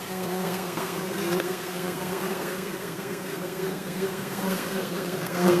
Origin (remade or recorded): remade